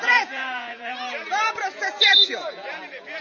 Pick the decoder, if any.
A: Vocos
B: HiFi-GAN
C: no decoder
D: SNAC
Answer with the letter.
A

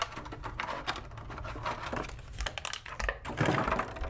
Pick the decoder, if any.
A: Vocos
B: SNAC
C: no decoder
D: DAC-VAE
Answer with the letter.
C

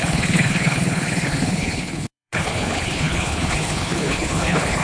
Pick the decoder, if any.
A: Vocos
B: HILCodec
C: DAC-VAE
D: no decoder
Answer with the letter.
B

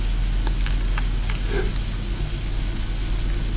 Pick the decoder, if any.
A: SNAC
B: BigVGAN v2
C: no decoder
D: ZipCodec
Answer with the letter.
C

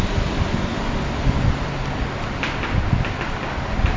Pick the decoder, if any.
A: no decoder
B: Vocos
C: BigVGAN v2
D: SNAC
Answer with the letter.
A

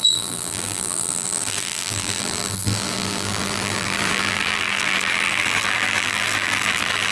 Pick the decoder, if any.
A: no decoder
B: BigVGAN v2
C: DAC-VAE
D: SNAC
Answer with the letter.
B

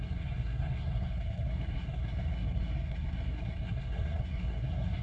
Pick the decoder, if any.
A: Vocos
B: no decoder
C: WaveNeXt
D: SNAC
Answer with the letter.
D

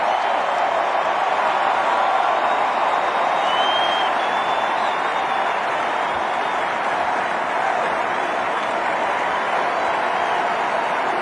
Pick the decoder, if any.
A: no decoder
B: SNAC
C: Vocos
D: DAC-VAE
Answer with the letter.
A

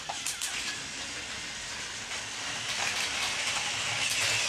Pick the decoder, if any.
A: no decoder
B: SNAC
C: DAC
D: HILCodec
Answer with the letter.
A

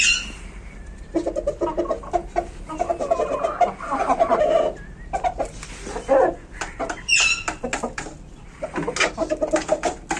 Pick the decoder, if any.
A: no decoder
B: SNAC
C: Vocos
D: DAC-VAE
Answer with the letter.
A